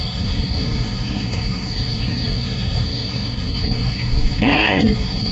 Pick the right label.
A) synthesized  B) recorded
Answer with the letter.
A